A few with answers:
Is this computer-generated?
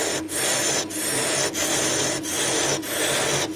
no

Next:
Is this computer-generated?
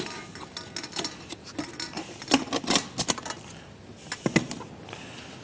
no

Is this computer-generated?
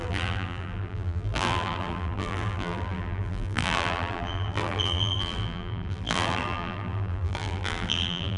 yes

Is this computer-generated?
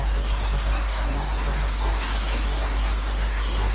yes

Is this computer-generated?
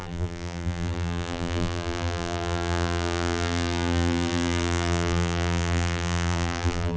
yes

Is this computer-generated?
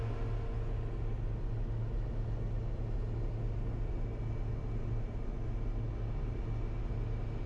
no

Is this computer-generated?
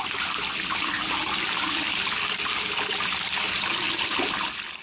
no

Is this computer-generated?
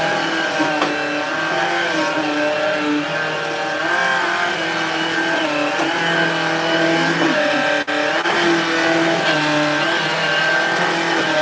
no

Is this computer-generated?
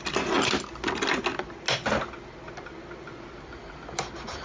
no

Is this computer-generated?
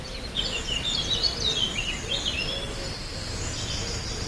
yes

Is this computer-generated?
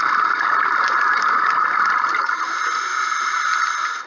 no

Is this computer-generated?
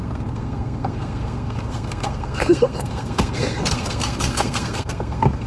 yes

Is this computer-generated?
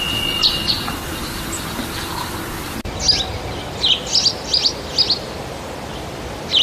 no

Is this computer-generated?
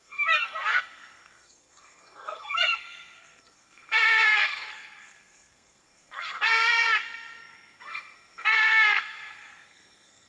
yes